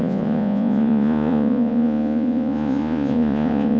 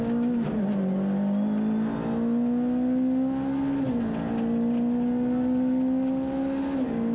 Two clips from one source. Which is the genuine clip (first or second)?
second